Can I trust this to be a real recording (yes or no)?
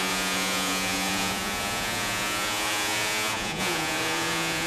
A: no